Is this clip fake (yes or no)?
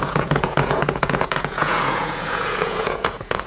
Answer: yes